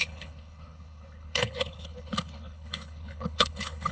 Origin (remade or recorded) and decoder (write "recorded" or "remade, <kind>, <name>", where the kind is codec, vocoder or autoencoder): remade, codec, HILCodec